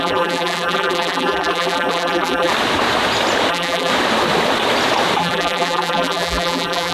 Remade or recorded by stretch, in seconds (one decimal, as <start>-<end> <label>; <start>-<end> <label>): 0.0-2.5 remade; 2.5-3.5 recorded; 3.5-3.9 remade; 3.9-5.2 recorded; 5.2-6.9 remade